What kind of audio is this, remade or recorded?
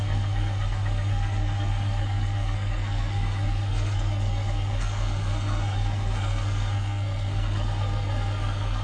remade